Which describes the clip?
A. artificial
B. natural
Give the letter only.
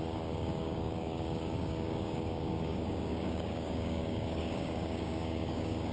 A